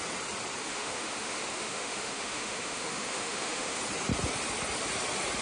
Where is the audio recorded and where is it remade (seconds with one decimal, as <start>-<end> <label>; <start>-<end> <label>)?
0.0-0.6 recorded; 0.6-3.8 remade; 3.8-5.4 recorded